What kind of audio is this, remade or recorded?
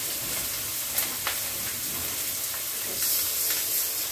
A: recorded